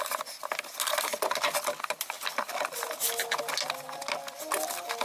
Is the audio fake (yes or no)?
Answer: no